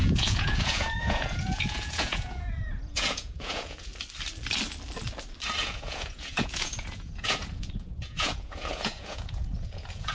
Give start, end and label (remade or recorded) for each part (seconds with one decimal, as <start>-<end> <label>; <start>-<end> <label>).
0.0-3.9 remade; 3.9-5.6 recorded; 5.6-10.1 remade